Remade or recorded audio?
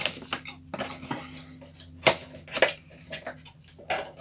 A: recorded